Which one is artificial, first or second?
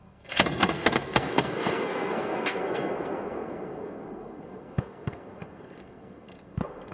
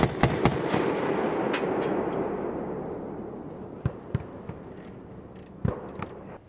first